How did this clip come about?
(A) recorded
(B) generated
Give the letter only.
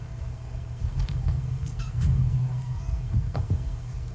B